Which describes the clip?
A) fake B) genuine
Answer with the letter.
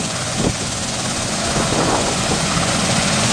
A